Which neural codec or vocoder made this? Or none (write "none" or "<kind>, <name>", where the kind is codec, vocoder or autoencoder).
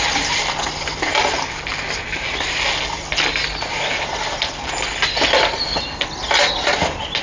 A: none